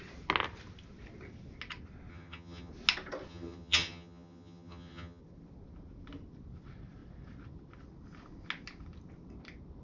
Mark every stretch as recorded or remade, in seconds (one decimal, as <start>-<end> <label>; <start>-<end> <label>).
0.0-2.1 recorded; 2.1-2.7 remade; 2.7-3.3 recorded; 3.3-5.2 remade; 5.2-9.8 recorded